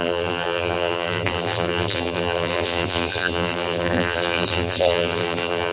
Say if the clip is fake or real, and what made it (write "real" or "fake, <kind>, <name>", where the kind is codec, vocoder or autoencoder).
fake, vocoder, BigVGAN v2